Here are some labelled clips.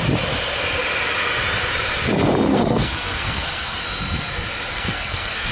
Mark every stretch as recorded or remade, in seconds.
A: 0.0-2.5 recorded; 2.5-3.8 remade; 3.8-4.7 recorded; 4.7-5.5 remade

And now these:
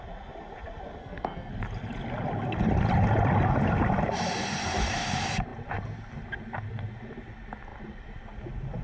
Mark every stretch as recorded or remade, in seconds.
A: 0.0-1.0 recorded; 1.0-1.5 remade; 1.5-8.8 recorded

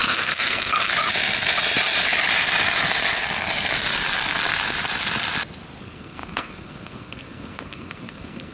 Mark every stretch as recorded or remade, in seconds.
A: 0.0-0.9 remade; 0.9-5.8 recorded; 5.8-8.5 remade

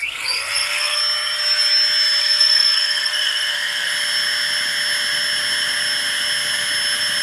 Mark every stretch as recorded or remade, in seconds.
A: 0.0-1.0 remade; 1.0-2.2 recorded; 2.2-3.9 remade; 3.9-7.2 recorded

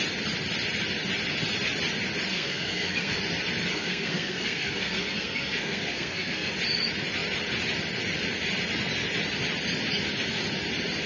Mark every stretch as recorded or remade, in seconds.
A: 0.0-2.3 recorded; 2.3-3.2 remade; 3.2-3.7 recorded; 3.7-6.5 remade; 6.5-11.1 recorded

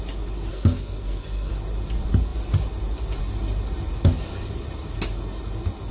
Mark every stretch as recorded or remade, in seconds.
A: 0.0-0.5 recorded; 0.5-1.5 remade; 1.5-5.9 recorded